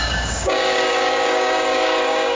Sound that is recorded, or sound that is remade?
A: remade